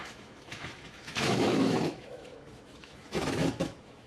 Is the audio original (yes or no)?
no